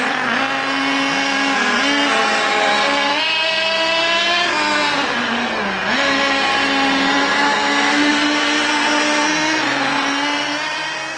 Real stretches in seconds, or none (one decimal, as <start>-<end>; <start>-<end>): 0.0-7.3; 8.1-11.2